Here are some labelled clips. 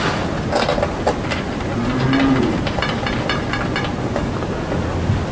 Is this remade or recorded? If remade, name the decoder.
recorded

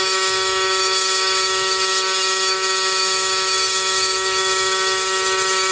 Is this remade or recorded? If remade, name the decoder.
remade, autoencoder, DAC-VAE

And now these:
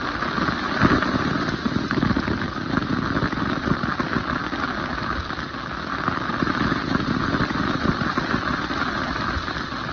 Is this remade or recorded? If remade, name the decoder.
recorded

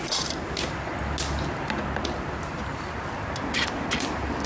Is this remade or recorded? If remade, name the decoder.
recorded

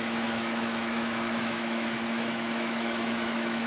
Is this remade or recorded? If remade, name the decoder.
remade, autoencoder, DAC-VAE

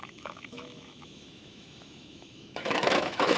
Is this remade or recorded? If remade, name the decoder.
remade, autoencoder, DAC-VAE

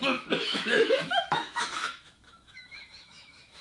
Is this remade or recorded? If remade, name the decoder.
remade, autoencoder, DAC-VAE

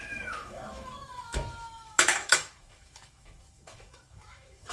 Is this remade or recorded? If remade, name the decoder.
remade, autoencoder, DAC-VAE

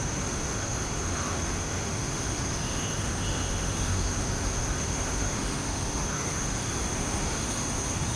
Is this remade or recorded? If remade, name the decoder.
remade, autoencoder, DAC-VAE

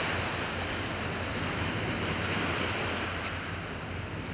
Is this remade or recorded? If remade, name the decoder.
recorded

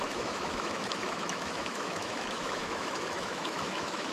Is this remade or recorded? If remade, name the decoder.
remade, autoencoder, DAC-VAE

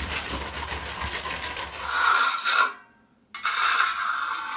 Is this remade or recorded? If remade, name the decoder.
recorded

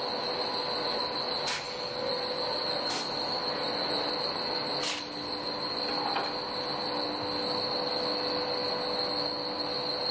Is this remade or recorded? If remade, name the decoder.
recorded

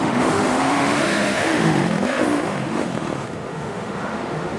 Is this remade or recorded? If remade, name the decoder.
remade, autoencoder, DAC-VAE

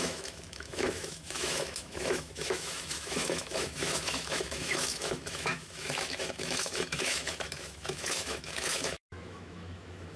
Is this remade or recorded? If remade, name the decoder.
remade, autoencoder, DAC-VAE